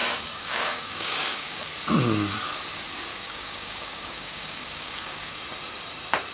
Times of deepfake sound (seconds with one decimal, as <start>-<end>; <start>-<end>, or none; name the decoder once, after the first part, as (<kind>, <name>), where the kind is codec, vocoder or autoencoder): 0.0-1.7 (codec, DAC); 3.1-5.3